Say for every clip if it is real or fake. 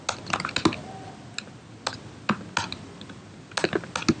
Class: real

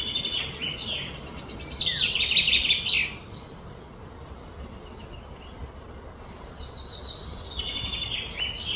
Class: real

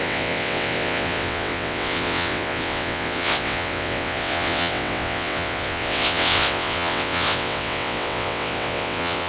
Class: fake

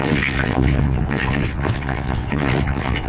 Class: fake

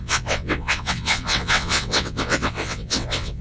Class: fake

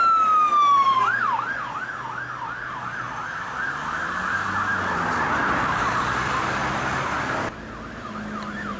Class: real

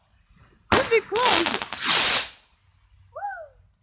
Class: real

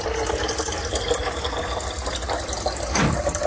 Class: real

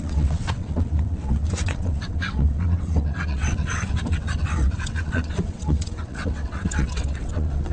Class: fake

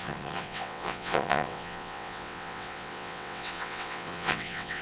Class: fake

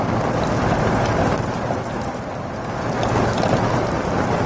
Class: real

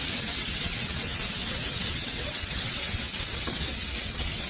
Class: fake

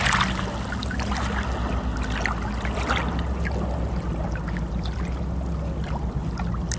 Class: real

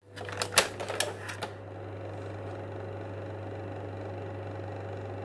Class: real